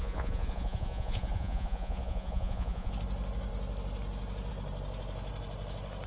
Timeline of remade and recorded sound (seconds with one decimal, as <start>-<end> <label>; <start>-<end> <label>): 0.0-2.9 remade; 2.9-6.1 recorded